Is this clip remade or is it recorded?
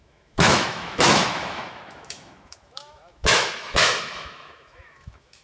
remade